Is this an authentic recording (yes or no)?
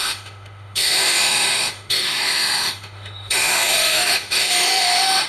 no